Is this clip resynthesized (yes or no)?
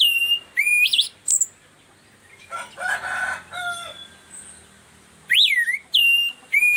no